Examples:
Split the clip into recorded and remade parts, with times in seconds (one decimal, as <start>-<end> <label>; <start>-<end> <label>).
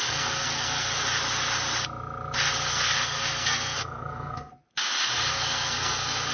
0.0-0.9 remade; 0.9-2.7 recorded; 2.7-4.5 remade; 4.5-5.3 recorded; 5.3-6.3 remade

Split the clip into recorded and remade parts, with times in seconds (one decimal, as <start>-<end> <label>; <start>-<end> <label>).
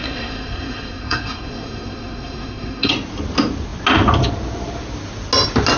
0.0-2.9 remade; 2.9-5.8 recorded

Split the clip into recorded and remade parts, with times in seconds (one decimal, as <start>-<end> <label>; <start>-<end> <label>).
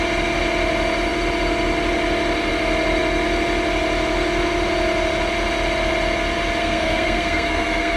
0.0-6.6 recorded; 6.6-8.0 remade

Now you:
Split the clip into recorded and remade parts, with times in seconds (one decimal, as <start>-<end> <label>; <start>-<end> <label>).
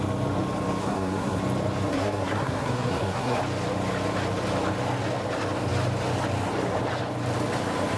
0.0-0.8 recorded; 0.8-1.4 remade; 1.4-1.9 recorded; 1.9-3.4 remade; 3.4-8.0 recorded